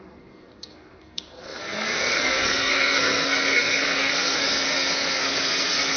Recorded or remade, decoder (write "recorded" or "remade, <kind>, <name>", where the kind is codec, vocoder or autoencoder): remade, codec, SNAC